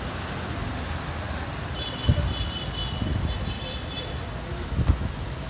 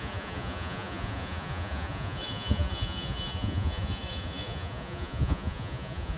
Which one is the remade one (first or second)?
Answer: second